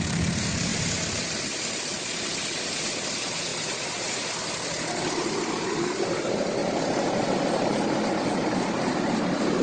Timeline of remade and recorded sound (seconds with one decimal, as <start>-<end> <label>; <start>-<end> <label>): 0.0-0.7 recorded; 0.7-2.5 remade; 2.5-6.6 recorded; 6.6-7.2 remade; 7.2-9.6 recorded